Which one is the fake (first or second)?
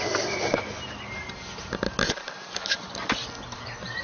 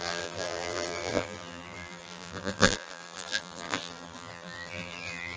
second